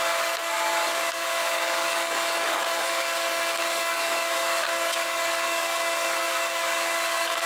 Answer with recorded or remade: remade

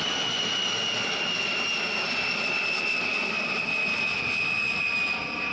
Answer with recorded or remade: recorded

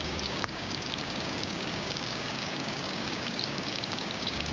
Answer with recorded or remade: remade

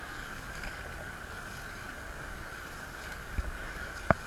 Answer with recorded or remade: remade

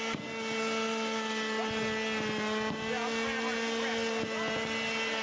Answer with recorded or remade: recorded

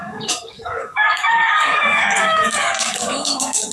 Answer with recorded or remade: remade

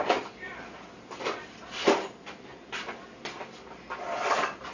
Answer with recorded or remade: recorded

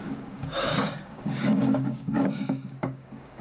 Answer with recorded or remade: remade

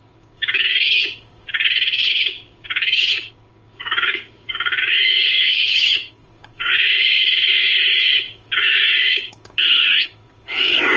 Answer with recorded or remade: remade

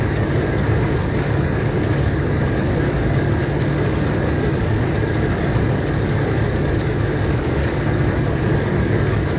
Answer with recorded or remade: remade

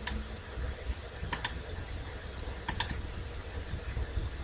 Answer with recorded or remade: recorded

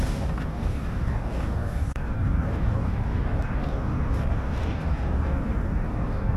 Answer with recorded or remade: remade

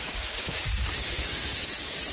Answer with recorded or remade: remade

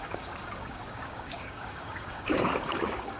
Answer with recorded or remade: remade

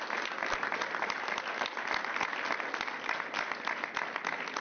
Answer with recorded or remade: recorded